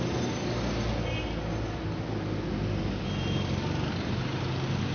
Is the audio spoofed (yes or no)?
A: no